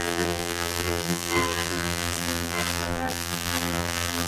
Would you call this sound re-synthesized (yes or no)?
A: yes